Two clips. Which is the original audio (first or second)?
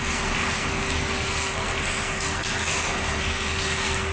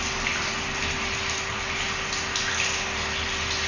second